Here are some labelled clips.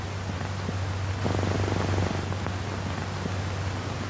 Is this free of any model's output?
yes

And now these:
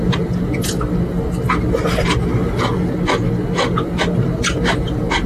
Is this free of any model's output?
yes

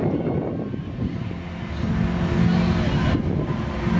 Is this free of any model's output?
yes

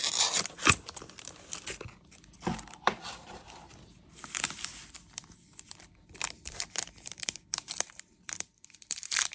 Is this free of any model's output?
no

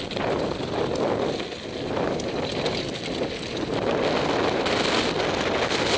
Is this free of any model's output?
yes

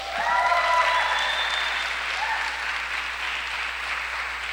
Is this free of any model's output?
yes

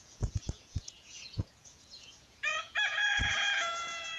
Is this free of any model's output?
no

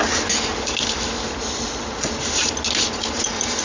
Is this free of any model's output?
yes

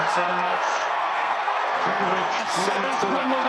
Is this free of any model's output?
no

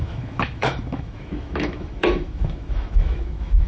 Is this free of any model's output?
no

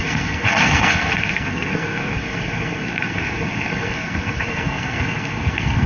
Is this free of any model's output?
no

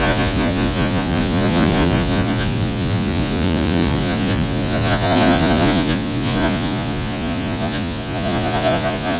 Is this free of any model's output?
no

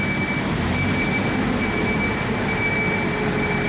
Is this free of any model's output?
yes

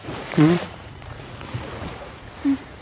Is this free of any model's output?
no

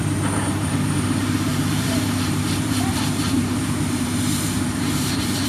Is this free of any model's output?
no